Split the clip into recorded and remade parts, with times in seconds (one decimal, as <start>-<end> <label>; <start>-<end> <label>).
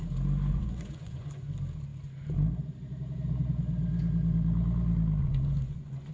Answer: 0.0-0.5 recorded; 0.5-1.5 remade; 1.5-5.2 recorded; 5.2-6.1 remade